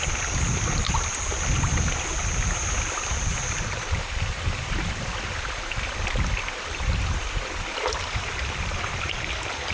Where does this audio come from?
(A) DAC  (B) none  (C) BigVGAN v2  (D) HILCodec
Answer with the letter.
C